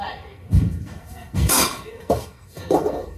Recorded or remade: remade